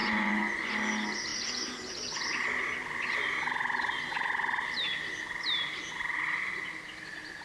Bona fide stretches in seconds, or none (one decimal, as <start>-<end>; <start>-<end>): 0.7-7.4